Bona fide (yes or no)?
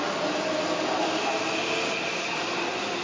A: yes